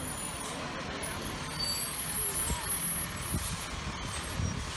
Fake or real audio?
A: real